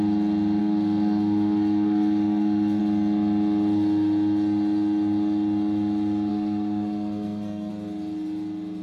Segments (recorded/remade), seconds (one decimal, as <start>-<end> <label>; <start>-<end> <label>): 0.0-0.6 recorded; 0.6-2.8 remade; 2.8-6.3 recorded; 6.3-7.7 remade; 7.7-8.8 recorded